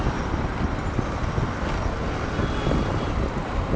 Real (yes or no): yes